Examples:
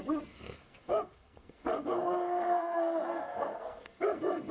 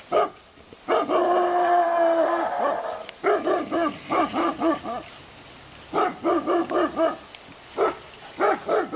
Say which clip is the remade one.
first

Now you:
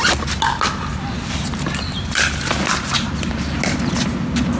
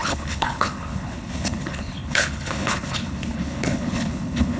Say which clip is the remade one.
second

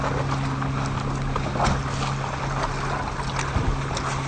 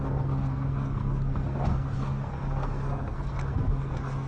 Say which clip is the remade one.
second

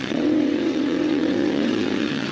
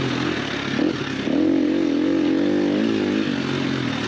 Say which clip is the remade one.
first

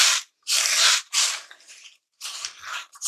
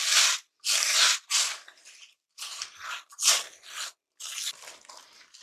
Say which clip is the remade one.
first